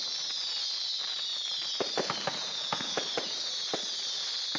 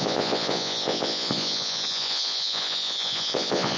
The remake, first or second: second